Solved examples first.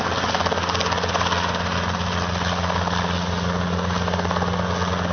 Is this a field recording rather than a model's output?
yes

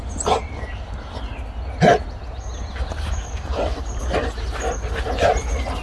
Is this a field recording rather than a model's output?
yes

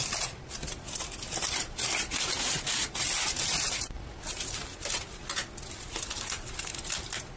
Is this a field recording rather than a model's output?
yes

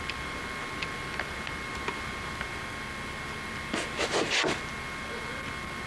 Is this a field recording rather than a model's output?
yes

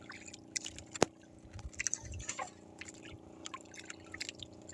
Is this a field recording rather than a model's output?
yes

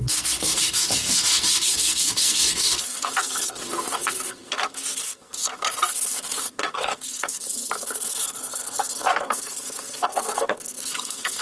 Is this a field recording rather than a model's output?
no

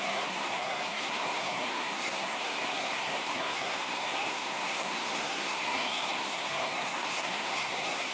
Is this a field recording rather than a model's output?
no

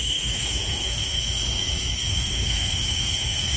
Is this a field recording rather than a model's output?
no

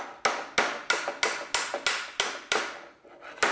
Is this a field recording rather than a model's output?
yes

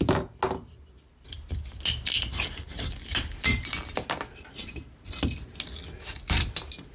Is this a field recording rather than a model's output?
yes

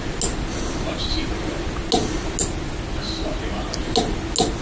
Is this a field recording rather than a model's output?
yes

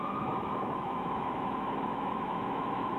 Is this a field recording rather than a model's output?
no